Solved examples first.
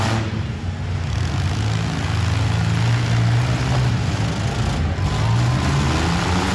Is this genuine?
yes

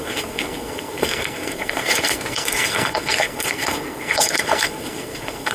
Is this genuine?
no